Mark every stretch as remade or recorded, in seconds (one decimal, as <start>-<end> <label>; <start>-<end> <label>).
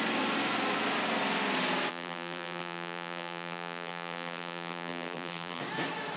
0.0-1.9 recorded; 1.9-5.6 remade; 5.6-6.2 recorded